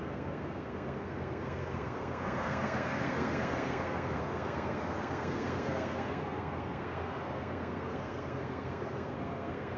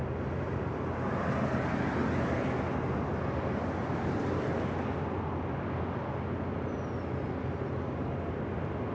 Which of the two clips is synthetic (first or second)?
first